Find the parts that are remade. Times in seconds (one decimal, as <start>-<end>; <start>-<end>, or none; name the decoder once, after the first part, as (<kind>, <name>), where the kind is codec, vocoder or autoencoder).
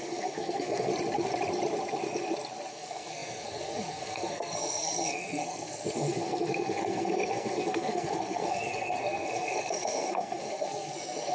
0.0-0.9 (codec, SNAC); 2.7-11.3